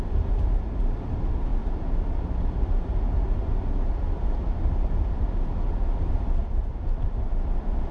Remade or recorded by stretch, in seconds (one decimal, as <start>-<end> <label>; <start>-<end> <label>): 0.0-7.9 recorded